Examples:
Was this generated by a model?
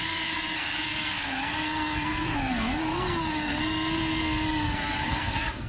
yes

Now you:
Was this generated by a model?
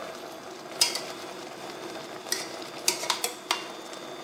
no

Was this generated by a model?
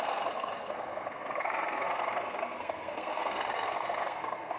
yes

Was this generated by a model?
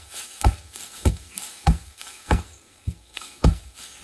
yes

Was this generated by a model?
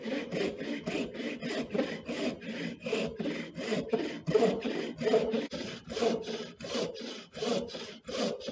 no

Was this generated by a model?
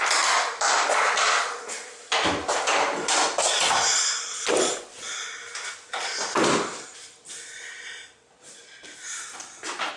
no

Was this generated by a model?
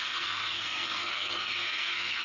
yes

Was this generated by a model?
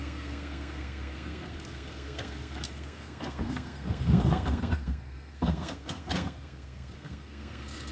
yes